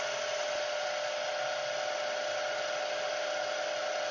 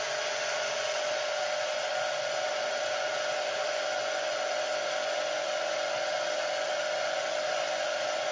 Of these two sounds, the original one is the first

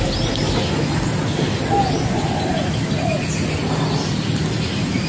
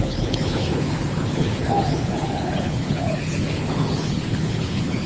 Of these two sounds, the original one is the first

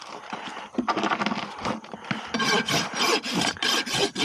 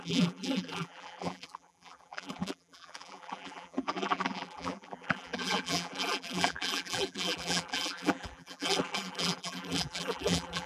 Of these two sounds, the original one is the first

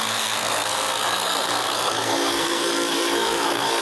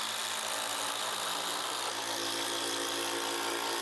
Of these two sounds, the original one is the second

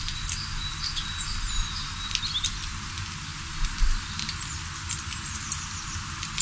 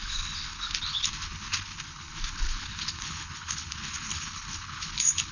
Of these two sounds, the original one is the first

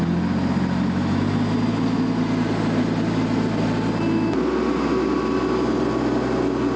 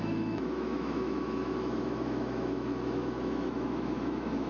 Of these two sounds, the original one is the first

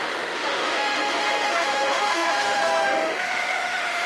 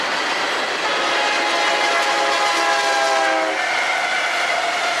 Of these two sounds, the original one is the second